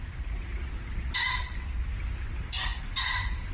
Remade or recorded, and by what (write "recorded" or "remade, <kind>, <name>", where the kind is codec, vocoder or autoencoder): recorded